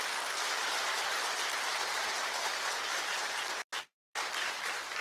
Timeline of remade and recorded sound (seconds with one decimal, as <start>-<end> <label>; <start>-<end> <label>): 0.0-0.6 recorded; 0.6-1.2 remade; 1.2-1.8 recorded; 1.8-4.6 remade; 4.6-5.0 recorded